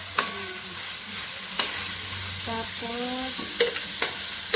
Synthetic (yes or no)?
no